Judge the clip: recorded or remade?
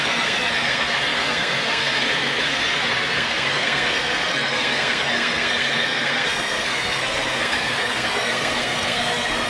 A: remade